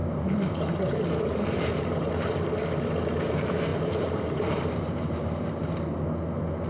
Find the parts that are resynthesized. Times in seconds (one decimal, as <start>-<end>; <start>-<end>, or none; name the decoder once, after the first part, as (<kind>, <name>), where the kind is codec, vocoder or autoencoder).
0.0-2.3 (vocoder, BigVGAN v2); 3.7-4.8